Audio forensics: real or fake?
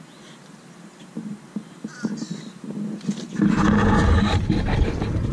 real